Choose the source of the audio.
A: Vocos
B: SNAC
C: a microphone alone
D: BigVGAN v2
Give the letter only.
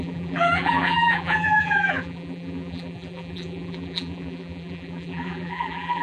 D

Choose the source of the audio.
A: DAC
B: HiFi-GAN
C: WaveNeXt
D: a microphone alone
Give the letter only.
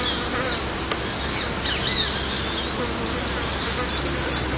D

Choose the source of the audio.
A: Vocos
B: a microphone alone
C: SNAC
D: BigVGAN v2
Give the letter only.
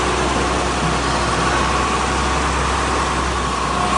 B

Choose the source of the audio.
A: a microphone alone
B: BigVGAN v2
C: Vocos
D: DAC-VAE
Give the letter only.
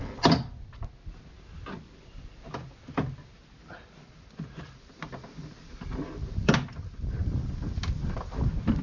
A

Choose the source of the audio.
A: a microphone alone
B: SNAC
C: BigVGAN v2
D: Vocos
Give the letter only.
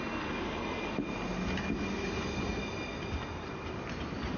A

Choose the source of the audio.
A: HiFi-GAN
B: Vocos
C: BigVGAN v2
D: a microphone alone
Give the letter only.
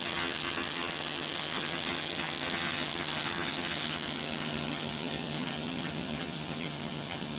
A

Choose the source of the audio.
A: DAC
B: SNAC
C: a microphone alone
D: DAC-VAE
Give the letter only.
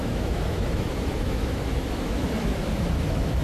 D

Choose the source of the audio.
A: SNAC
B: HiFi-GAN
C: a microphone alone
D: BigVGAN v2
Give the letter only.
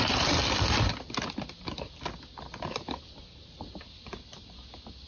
C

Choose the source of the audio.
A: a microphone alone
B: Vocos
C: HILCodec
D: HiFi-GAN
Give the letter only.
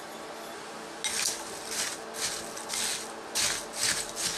A